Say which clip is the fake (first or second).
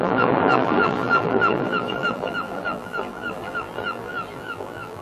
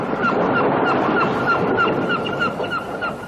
first